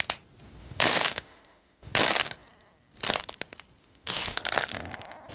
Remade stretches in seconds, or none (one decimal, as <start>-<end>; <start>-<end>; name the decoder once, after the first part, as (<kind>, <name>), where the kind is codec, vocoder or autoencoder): 0.6-1.9 (autoencoder, DAC-VAE); 3.8-4.4